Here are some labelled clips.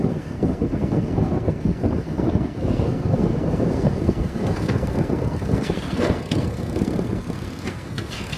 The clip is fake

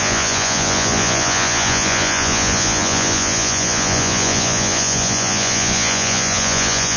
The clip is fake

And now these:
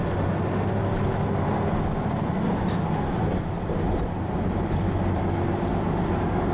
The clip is real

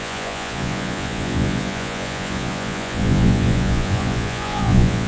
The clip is fake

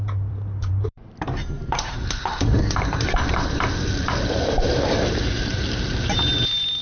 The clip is fake